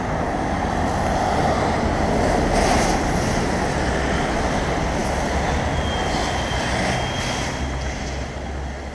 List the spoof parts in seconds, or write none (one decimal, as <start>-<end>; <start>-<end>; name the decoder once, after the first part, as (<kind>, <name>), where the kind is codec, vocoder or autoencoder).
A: none